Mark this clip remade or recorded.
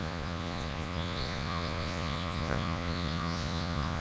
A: remade